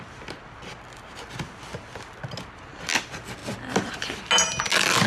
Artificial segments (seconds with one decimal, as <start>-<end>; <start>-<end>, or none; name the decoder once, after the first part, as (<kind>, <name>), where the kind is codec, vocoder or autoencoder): none